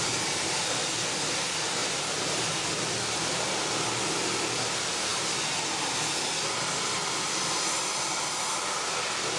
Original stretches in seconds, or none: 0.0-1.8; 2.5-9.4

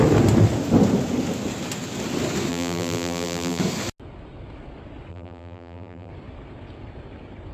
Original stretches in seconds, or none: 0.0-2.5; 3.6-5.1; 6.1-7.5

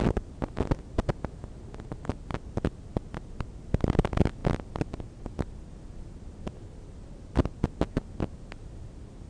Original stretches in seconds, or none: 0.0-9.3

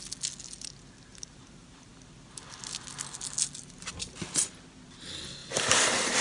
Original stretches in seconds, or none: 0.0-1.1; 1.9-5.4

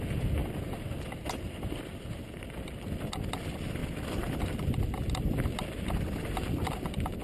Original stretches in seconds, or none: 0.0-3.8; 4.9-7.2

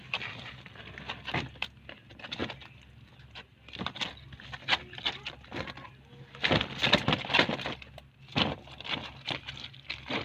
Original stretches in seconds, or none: 0.0-10.2

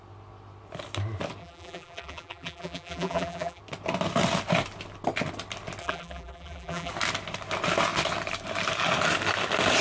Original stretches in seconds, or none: 0.0-1.4; 3.6-5.8; 6.9-9.8